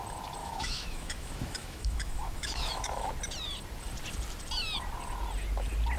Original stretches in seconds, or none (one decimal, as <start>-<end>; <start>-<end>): 0.0-0.4; 3.1-6.0